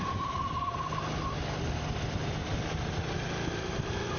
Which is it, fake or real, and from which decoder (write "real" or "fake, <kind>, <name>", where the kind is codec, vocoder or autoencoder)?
real